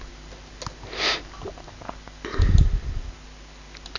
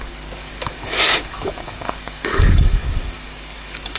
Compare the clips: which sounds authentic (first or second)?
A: first